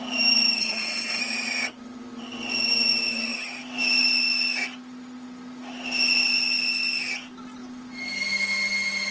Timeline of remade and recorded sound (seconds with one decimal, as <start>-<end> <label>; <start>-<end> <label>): 0.0-0.6 recorded; 0.6-1.2 remade; 1.2-9.1 recorded